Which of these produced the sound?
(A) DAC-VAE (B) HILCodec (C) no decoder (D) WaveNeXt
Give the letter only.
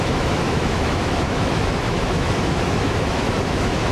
A